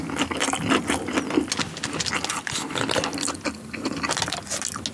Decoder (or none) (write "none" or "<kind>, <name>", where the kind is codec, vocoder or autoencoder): none